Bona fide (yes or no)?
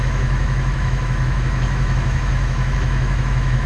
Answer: no